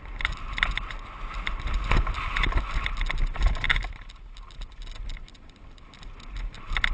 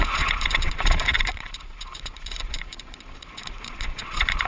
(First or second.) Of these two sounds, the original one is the first